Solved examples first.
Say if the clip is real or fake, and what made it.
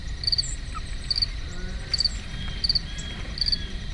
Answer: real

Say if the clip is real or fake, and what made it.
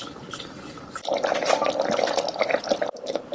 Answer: real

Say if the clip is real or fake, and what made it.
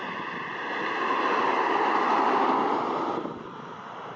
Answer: real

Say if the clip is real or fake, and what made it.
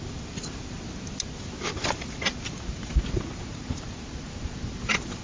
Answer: real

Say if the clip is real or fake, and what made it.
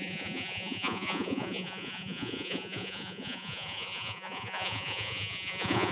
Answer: fake, vocoder, Vocos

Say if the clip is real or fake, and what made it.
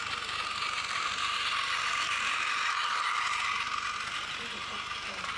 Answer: real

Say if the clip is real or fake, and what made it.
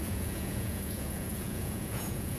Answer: fake, vocoder, Vocos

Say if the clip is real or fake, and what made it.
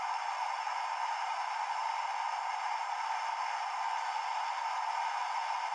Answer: real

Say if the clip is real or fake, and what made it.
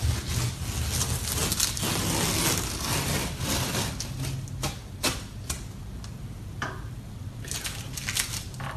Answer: real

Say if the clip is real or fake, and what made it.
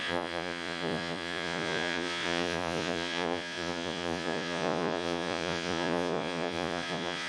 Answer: fake, vocoder, Vocos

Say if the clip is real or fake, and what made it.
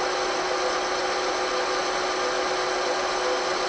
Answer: real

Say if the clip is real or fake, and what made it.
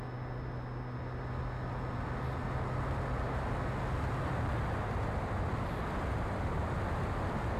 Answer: real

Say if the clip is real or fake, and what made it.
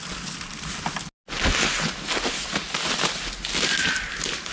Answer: real